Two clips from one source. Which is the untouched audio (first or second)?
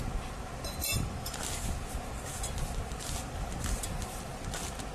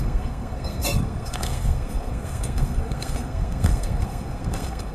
first